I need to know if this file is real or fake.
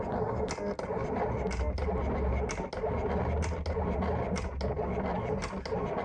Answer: real